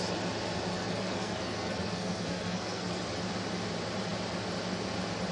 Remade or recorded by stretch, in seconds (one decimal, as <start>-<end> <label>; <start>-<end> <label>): 0.0-0.7 recorded; 0.7-3.0 remade; 3.0-5.3 recorded